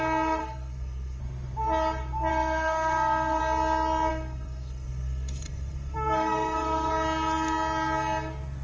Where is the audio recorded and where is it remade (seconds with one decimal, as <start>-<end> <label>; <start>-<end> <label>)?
0.0-0.4 recorded; 0.4-1.2 remade; 1.2-2.3 recorded; 2.3-3.4 remade; 3.4-4.1 recorded; 4.1-6.9 remade; 6.9-8.6 recorded